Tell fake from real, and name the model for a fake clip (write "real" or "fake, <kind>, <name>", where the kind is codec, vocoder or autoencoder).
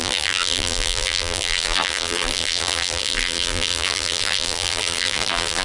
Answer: fake, vocoder, BigVGAN v2